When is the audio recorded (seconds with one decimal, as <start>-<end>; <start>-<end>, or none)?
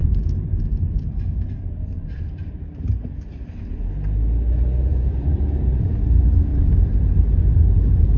3.9-4.9; 6.0-6.5